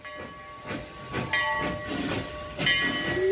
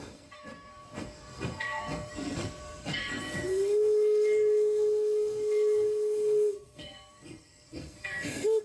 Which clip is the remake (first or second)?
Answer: second